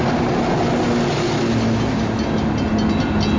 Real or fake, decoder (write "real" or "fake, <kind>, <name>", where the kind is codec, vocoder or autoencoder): real